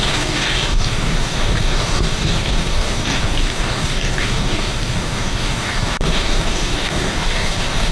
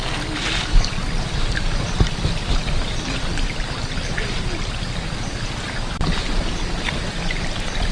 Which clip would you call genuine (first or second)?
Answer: second